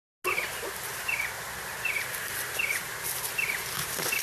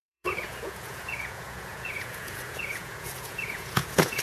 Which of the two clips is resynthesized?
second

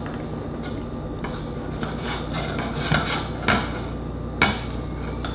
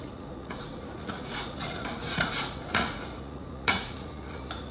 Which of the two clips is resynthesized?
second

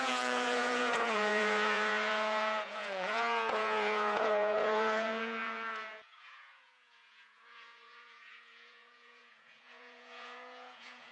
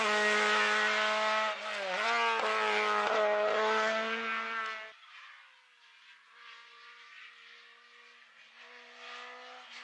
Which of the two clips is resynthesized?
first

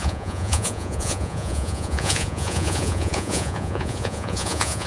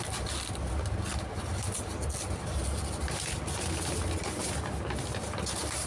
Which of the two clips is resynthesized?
first